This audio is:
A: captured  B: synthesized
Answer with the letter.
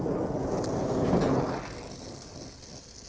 A